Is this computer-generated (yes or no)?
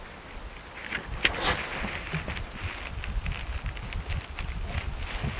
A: no